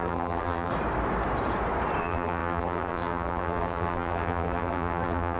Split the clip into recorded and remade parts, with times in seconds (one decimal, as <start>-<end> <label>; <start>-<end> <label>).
0.0-0.7 remade; 0.7-2.0 recorded; 2.0-5.4 remade